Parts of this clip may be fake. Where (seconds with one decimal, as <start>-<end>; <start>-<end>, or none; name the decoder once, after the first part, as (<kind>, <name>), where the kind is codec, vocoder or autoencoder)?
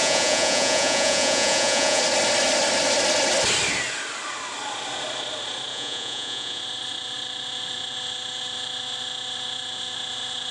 0.0-2.0 (vocoder, Vocos); 5.7-6.6